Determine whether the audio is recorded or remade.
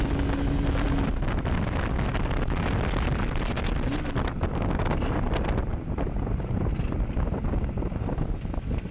recorded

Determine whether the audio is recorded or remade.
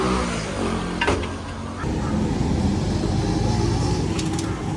recorded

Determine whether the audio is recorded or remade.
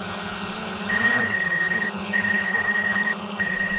remade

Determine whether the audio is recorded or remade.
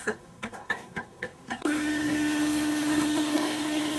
remade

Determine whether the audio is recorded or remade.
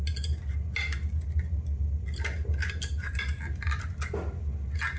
recorded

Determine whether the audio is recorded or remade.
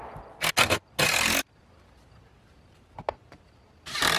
remade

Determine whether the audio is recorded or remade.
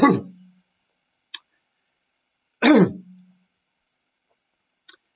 recorded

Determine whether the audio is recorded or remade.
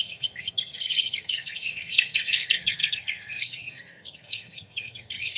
remade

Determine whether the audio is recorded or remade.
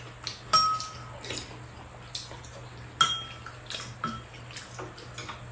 recorded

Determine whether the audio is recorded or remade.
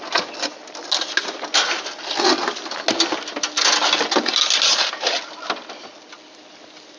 recorded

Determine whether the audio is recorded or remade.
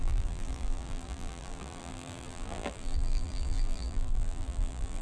remade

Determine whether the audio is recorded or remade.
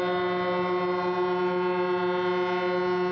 recorded